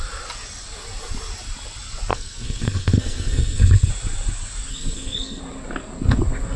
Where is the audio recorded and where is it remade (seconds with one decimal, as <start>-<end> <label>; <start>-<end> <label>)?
0.0-2.1 recorded; 2.1-3.9 remade; 3.9-4.7 recorded; 4.7-5.4 remade; 5.4-6.6 recorded